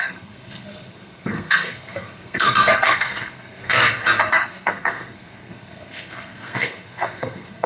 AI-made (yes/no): yes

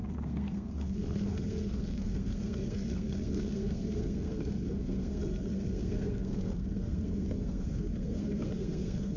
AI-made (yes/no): yes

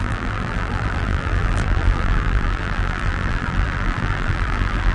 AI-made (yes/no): yes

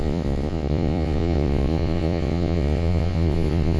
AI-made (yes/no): yes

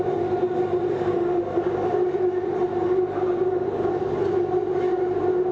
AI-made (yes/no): no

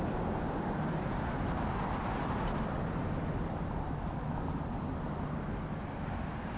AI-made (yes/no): no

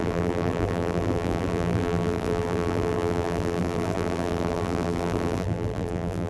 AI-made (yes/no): yes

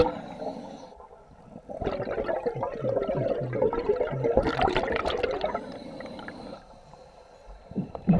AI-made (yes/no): no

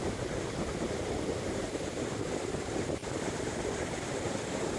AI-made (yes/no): no